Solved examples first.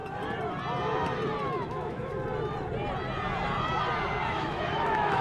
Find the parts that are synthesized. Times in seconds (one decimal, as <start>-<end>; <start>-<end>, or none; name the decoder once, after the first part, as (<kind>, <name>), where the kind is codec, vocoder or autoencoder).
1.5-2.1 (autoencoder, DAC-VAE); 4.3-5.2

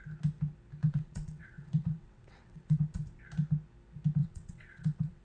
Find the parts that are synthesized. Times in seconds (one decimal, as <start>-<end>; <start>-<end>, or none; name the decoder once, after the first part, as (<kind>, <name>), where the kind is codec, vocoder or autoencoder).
0.8-2.8 (vocoder, WaveNeXt); 4.2-5.2

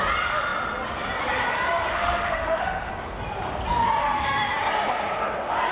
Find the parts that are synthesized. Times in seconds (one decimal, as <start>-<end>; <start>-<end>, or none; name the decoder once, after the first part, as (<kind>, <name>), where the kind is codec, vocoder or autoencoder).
1.9-2.9 (autoencoder, DAC-VAE); 4.0-4.6